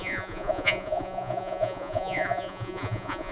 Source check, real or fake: fake